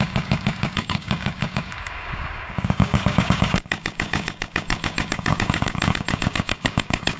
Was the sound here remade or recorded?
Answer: remade